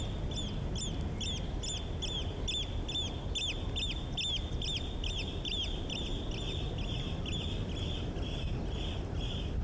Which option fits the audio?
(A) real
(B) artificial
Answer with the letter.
A